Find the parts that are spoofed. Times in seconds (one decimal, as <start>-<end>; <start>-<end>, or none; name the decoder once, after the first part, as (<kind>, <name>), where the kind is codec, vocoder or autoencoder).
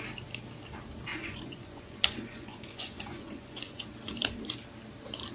1.1-3.8 (vocoder, Vocos)